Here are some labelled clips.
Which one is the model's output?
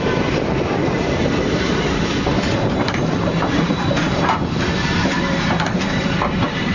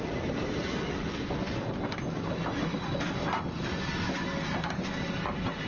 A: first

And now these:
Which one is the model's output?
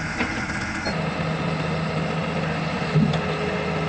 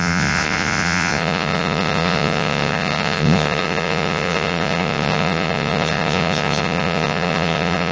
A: second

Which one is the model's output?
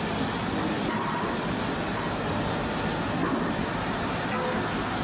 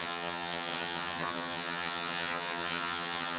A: second